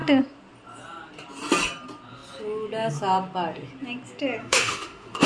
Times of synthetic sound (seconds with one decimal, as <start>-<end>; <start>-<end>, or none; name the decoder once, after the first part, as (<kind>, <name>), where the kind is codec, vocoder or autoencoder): 4.4-5.3 (autoencoder, DAC-VAE)